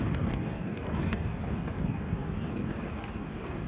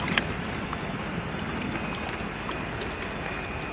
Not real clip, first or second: first